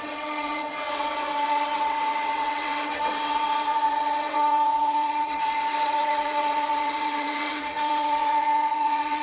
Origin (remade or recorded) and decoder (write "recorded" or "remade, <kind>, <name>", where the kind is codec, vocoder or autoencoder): remade, vocoder, WaveNeXt